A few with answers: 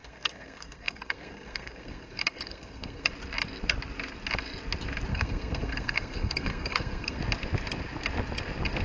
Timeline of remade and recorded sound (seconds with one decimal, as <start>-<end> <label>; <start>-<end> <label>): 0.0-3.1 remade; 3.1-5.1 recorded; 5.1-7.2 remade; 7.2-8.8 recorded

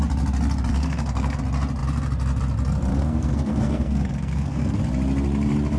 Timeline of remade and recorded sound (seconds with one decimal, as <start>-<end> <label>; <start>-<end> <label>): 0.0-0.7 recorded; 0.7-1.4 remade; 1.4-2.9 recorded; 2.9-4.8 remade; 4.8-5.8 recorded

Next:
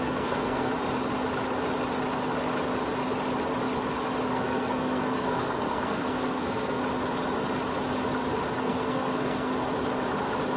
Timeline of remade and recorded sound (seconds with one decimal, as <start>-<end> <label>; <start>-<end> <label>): 0.0-0.7 remade; 0.7-4.3 recorded; 4.3-6.8 remade; 6.8-8.6 recorded; 8.6-9.5 remade; 9.5-10.6 recorded